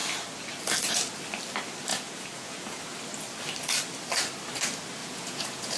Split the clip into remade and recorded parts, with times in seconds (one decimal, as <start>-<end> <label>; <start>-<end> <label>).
0.0-1.9 recorded; 1.9-2.8 remade; 2.8-5.0 recorded; 5.0-5.8 remade